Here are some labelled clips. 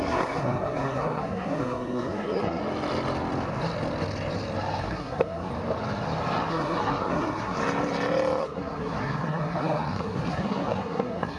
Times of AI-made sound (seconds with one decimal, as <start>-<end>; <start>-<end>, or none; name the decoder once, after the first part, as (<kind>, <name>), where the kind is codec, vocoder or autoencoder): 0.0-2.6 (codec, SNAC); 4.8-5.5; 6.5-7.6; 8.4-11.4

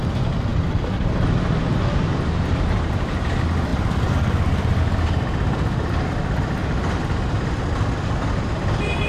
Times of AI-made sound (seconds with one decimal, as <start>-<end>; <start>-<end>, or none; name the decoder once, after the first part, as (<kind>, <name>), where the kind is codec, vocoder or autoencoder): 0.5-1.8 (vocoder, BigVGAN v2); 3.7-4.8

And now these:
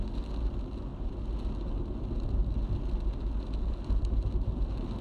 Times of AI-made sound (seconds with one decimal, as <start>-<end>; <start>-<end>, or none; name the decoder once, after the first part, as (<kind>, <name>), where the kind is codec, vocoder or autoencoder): none

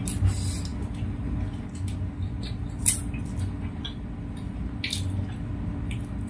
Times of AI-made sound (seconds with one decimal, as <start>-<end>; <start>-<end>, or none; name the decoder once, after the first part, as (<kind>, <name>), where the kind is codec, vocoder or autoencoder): none

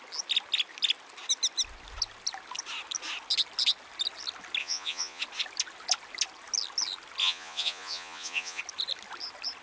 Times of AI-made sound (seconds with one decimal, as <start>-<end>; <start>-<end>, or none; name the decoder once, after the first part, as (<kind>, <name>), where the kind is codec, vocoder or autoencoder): 4.6-5.2 (vocoder, Vocos); 7.2-8.6

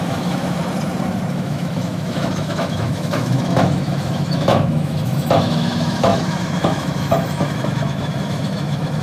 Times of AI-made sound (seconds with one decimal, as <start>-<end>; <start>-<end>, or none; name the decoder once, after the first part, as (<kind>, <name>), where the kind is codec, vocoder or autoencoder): 0.0-0.6 (autoencoder, DAC-VAE); 1.3-9.0